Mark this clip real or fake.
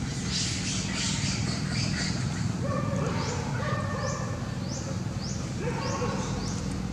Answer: real